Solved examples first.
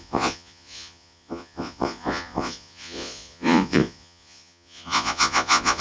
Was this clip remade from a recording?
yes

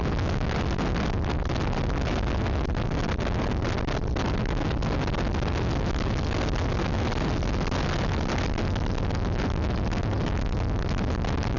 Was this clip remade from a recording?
no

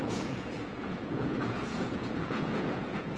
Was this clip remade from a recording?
yes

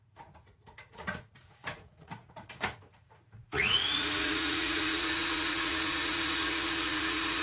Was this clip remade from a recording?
yes